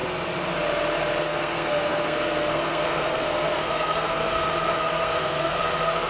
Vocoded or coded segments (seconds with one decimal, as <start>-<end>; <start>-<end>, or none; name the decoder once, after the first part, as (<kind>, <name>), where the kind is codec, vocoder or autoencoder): 1.2-6.1 (codec, SNAC)